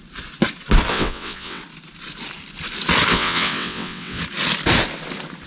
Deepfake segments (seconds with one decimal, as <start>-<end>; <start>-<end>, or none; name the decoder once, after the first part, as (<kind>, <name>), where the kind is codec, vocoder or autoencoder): 0.9-1.6 (vocoder, WaveNeXt); 3.1-4.2